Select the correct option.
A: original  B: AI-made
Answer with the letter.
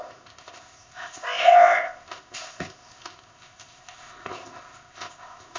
B